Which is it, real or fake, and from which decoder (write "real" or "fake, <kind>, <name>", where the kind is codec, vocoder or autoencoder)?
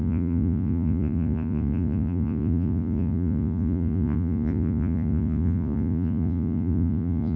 fake, vocoder, Vocos